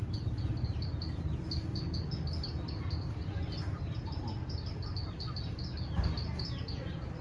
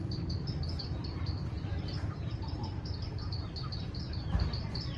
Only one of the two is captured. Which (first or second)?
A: first